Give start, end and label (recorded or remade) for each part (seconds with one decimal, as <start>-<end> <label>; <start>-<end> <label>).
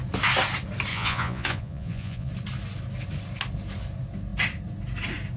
0.0-0.9 recorded; 0.9-2.3 remade; 2.3-5.4 recorded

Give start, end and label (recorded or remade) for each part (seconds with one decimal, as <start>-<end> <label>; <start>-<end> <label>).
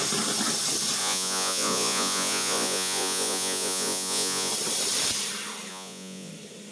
0.0-1.0 recorded; 1.0-4.5 remade; 4.5-5.7 recorded; 5.7-6.3 remade; 6.3-6.7 recorded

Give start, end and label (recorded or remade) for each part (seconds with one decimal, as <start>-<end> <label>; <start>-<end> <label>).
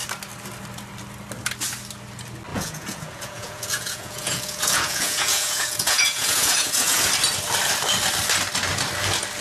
0.0-2.5 recorded; 2.5-7.1 remade; 7.1-9.4 recorded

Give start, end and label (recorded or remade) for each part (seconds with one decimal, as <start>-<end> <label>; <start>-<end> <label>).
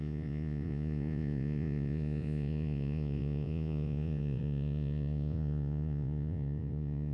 0.0-7.1 remade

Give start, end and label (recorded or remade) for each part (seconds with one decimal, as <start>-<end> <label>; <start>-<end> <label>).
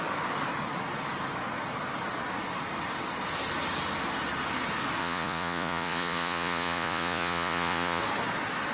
0.0-5.0 recorded; 5.0-8.0 remade; 8.0-8.7 recorded